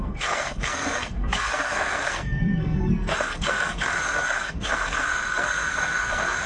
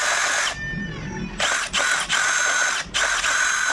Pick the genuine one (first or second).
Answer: second